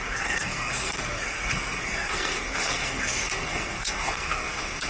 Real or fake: fake